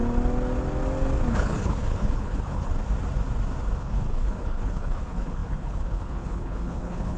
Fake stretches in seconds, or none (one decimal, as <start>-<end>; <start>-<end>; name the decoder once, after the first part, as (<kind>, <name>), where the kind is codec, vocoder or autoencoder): 1.3-2.7 (codec, HILCodec); 3.8-7.2